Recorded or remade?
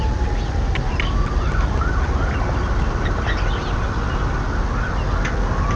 recorded